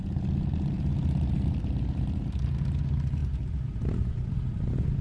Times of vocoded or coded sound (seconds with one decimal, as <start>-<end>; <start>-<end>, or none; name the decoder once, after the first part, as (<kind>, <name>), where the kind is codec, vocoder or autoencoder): none